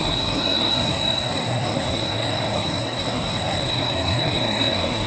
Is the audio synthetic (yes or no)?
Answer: yes